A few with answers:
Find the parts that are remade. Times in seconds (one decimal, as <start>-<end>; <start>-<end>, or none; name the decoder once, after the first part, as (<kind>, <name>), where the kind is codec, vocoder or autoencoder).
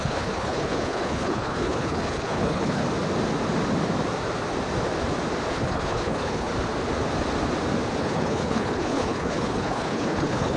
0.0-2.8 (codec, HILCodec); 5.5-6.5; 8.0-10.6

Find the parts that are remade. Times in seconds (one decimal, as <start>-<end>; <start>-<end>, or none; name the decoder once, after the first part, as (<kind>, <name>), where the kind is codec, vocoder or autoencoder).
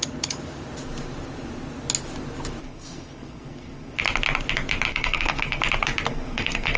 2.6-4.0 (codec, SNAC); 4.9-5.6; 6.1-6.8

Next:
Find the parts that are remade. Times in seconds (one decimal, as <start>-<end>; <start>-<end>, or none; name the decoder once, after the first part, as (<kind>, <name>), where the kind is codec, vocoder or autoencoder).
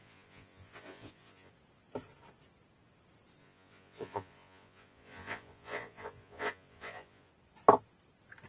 0.0-1.5 (vocoder, Vocos); 3.4-7.3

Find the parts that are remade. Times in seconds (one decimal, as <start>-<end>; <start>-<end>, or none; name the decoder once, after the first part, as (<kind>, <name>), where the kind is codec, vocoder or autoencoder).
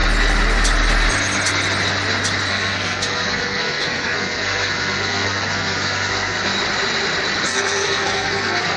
2.5-6.5 (codec, SNAC); 7.4-8.8